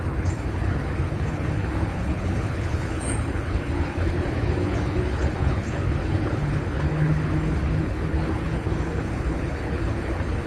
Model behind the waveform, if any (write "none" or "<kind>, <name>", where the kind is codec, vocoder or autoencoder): codec, HILCodec